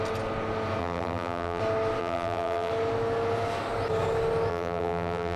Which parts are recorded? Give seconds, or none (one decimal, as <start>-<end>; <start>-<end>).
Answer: 0.0-0.8; 1.6-2.0; 2.7-4.5